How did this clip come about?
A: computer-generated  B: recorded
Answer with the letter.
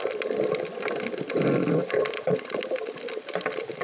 B